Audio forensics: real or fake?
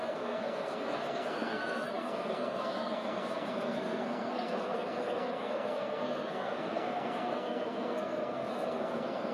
fake